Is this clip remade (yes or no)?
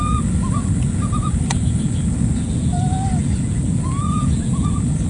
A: yes